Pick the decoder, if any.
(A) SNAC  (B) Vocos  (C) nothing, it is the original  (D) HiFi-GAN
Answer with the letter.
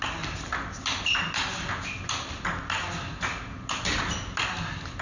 C